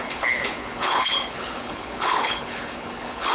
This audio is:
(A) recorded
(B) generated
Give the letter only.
B